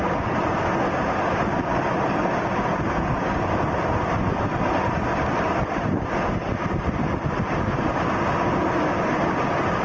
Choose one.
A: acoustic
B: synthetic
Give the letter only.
A